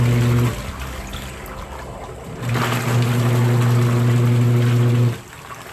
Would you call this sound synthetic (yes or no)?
no